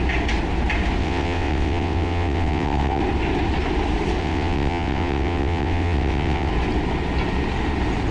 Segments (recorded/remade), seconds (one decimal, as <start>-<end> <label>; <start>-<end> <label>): 0.0-1.0 recorded; 1.0-3.0 remade; 3.0-4.2 recorded; 4.2-6.5 remade; 6.5-8.1 recorded